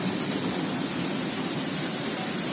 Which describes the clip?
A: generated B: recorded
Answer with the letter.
B